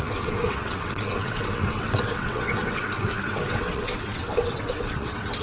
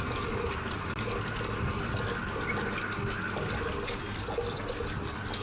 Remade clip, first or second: first